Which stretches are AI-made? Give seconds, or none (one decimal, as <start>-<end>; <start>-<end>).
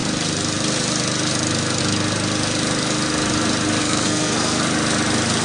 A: 3.8-4.6